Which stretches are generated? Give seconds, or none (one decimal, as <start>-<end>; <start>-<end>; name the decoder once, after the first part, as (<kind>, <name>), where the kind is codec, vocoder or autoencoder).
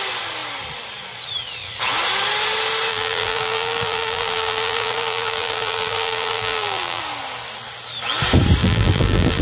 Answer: 2.9-7.0 (vocoder, BigVGAN v2); 8.6-9.4